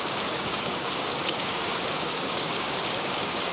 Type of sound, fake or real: fake